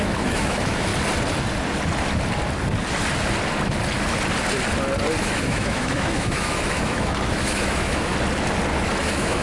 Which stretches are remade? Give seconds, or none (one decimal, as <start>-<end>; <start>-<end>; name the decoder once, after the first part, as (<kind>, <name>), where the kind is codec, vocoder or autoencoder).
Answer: 0.0-0.9 (autoencoder, DAC-VAE); 5.2-8.1; 9.0-9.4